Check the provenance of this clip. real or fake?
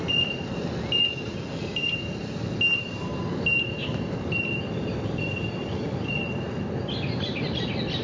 real